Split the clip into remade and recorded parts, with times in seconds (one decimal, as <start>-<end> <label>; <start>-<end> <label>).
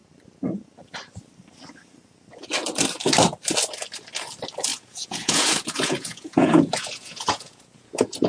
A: 0.0-4.7 recorded; 4.7-8.3 remade